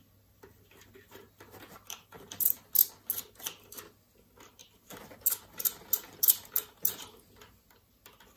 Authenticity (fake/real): real